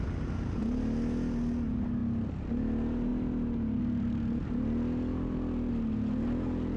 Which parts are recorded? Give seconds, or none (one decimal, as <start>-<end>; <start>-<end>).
0.0-6.8